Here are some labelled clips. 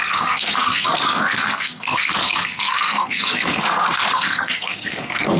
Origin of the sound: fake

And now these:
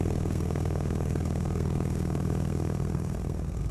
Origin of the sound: fake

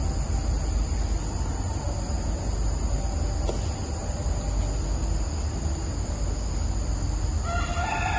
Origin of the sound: real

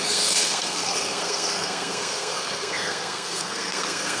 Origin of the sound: fake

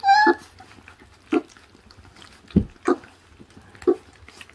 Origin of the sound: real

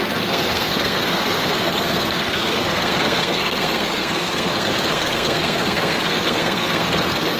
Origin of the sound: fake